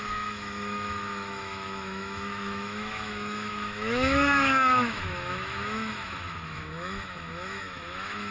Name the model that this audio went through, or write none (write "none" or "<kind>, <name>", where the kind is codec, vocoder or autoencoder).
autoencoder, DAC-VAE